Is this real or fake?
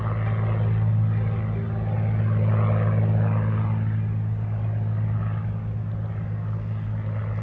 real